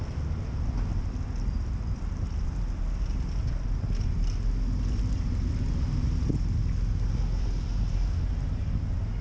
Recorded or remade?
recorded